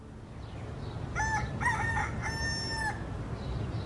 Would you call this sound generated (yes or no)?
no